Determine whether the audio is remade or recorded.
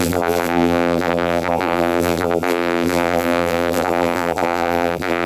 remade